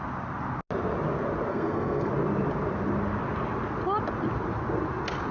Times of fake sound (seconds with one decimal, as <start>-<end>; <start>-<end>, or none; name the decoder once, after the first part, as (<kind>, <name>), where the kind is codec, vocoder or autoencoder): 1.5-2.1 (codec, SNAC)